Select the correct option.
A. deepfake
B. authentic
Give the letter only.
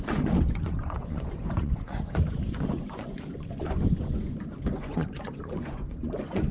A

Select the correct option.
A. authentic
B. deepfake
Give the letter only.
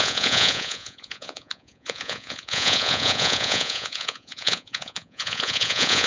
B